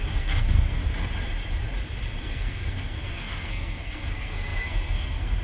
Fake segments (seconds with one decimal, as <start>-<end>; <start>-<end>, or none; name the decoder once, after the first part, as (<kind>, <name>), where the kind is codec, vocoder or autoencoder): 0.0-0.8 (codec, SNAC); 2.2-5.4